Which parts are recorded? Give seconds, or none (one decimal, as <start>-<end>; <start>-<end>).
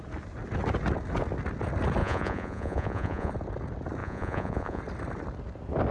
0.0-2.0; 3.3-4.0; 4.8-5.9